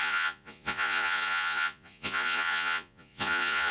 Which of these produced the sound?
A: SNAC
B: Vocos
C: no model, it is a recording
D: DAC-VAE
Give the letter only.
B